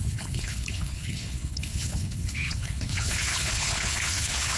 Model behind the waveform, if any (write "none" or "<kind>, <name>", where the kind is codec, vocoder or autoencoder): codec, HILCodec